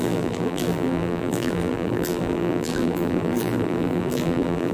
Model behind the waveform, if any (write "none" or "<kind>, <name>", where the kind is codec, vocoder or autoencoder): vocoder, BigVGAN v2